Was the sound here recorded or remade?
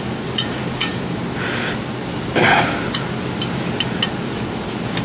recorded